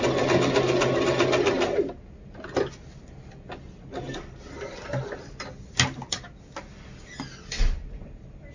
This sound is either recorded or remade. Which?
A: recorded